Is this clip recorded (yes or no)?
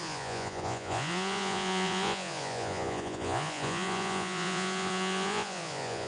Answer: no